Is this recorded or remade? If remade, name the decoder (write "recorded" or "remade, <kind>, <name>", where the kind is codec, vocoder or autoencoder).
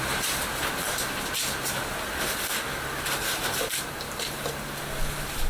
recorded